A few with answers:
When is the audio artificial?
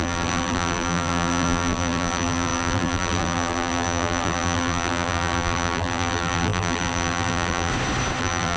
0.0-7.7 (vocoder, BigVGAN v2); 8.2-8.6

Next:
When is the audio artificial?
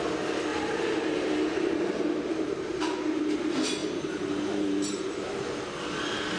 0.5-3.2 (vocoder, BigVGAN v2); 3.8-5.8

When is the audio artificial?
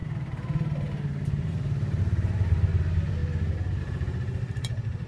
0.0-3.2 (vocoder, BigVGAN v2); 3.8-5.1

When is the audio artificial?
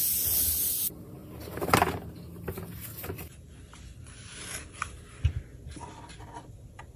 none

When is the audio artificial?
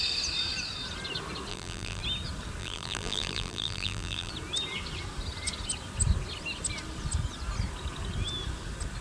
1.5-2.0 (vocoder, BigVGAN v2); 2.6-4.3